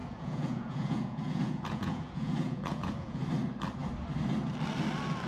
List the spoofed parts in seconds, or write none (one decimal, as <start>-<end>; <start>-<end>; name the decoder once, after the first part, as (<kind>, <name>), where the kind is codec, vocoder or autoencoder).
0.0-3.2 (vocoder, Vocos)